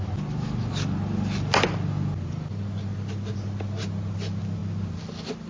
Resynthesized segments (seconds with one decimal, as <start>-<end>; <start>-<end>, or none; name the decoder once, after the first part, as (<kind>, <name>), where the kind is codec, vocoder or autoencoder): none